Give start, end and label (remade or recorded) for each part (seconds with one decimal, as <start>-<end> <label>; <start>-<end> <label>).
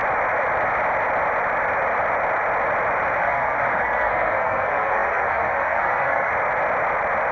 0.0-3.2 recorded; 3.2-6.3 remade; 6.3-7.3 recorded